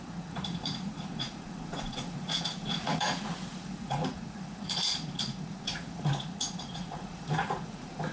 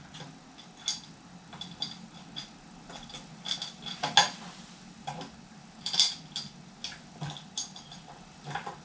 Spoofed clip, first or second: first